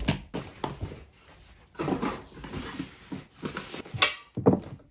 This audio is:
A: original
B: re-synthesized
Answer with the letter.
A